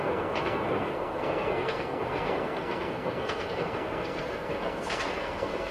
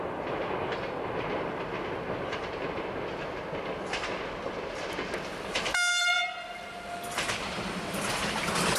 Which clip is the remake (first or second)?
first